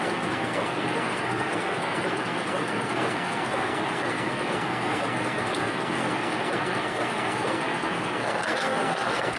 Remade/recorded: remade